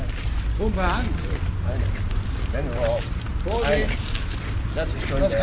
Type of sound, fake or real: real